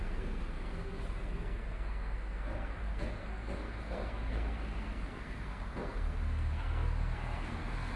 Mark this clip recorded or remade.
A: remade